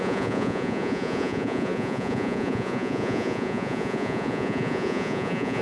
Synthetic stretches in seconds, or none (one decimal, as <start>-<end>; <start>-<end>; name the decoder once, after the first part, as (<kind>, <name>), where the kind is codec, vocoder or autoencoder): 0.0-5.6 (vocoder, Vocos)